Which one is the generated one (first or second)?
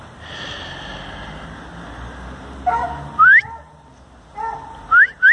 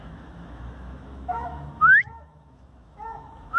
second